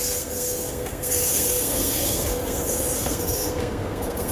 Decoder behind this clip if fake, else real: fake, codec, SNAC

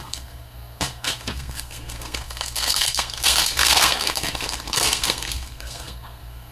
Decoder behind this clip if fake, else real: fake, codec, SNAC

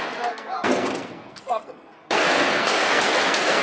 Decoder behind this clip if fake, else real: fake, codec, SNAC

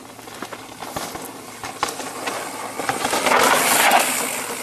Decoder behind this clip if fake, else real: real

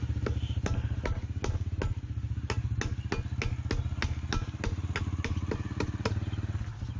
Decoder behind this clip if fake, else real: real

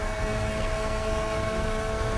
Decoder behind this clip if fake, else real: fake, codec, SNAC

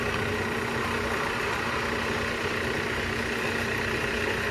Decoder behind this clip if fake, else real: real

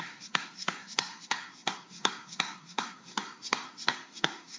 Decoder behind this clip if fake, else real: fake, codec, SNAC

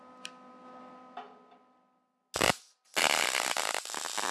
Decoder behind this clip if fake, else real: real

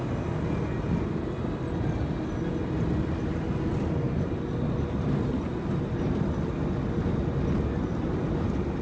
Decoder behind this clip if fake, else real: real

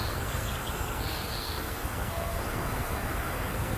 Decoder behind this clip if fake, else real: fake, codec, SNAC